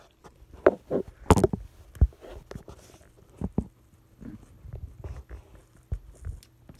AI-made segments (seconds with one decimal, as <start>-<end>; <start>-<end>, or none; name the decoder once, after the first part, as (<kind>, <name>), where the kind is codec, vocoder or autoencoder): none